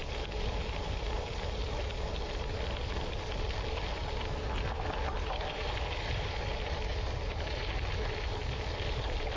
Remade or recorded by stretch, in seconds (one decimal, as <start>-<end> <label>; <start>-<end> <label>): 0.0-9.4 recorded